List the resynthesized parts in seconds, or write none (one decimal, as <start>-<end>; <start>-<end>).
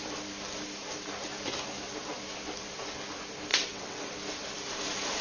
3.5-4.1